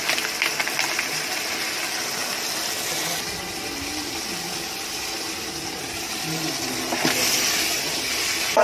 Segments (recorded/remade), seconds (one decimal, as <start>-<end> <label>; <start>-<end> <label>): 0.0-8.6 recorded